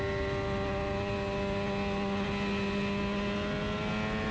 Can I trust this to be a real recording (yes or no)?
yes